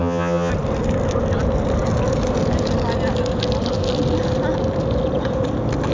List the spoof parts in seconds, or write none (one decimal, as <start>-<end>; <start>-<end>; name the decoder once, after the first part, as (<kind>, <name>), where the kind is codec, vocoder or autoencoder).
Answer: 0.0-0.5 (vocoder, HiFi-GAN)